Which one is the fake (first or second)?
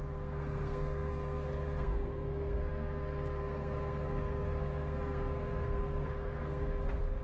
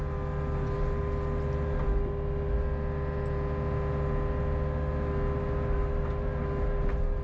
first